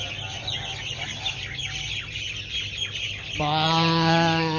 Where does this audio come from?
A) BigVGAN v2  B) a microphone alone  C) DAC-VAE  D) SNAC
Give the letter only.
B